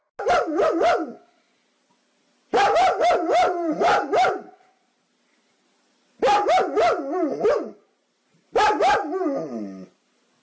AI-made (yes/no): no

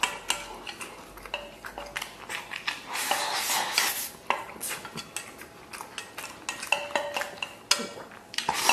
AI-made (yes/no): no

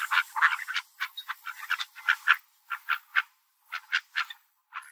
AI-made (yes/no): no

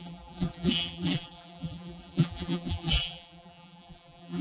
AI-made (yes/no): yes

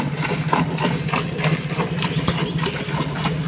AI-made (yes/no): no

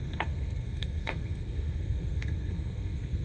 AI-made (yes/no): yes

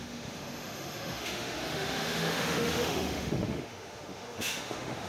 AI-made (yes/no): yes